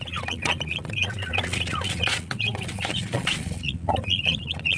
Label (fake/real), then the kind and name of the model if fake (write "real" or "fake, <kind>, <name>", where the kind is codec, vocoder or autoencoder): fake, vocoder, Vocos